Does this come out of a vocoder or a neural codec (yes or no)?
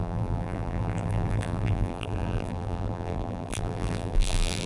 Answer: yes